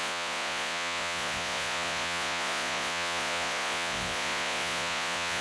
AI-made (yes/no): yes